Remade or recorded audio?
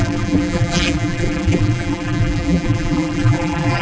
remade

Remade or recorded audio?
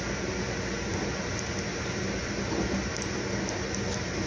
recorded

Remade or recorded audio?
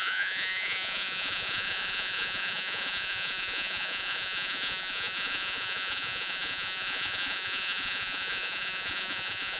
remade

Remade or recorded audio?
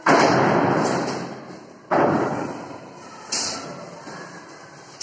recorded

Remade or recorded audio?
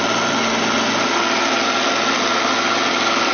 recorded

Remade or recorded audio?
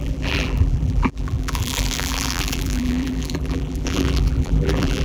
remade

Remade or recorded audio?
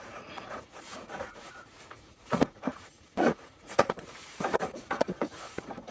remade